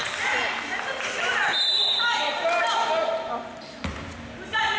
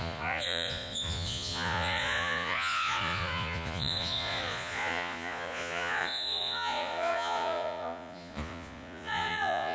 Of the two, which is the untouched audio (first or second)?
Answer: first